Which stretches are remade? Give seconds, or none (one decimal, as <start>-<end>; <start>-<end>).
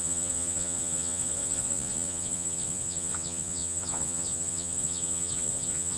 0.0-6.0